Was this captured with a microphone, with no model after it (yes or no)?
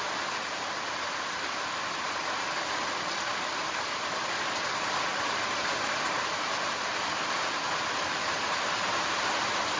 yes